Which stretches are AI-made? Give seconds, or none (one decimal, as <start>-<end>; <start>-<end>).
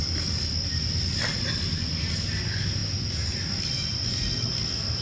none